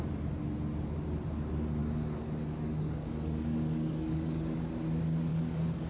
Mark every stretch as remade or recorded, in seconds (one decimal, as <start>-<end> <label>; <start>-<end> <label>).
0.0-1.8 recorded; 1.8-4.6 remade; 4.6-5.3 recorded; 5.3-5.9 remade